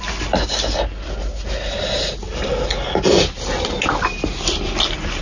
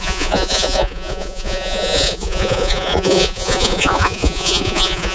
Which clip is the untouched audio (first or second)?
first